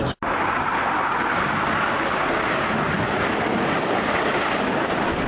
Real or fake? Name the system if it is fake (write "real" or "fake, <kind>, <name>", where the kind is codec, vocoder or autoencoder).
real